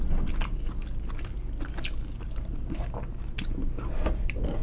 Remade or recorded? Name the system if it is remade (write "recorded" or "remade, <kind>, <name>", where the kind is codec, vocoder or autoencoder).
recorded